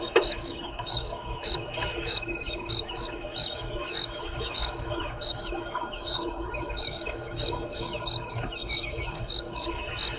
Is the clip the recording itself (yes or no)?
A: no